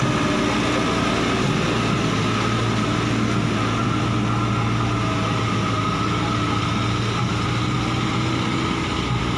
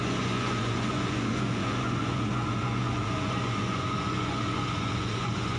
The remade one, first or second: second